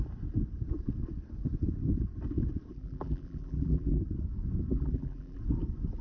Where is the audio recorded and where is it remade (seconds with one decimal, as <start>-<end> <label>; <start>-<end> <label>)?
0.0-2.7 recorded; 2.7-4.0 remade; 4.0-4.7 recorded; 4.7-5.4 remade; 5.4-6.0 recorded